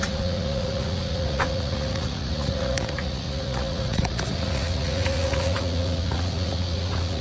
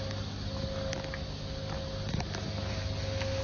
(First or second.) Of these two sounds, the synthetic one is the first